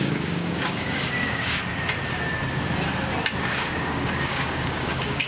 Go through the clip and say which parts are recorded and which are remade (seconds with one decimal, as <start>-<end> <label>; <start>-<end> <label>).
0.0-1.6 remade; 1.6-3.4 recorded; 3.4-5.3 remade